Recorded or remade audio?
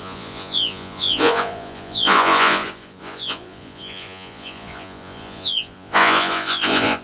remade